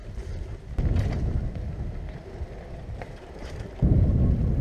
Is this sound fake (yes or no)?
no